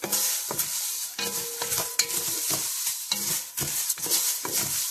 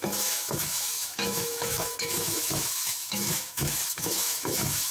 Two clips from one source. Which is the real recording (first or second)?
first